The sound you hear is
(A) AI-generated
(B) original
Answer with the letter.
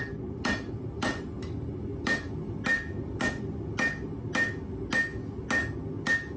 B